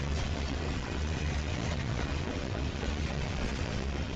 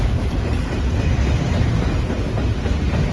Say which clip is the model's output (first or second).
first